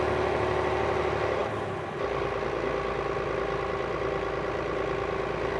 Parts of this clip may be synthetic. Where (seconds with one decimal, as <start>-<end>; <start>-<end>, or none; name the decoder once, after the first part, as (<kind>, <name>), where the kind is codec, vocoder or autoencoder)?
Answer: none